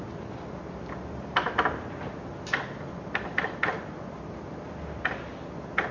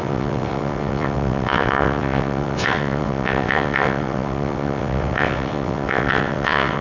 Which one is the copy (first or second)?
second